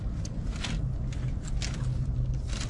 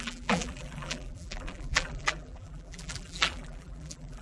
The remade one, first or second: second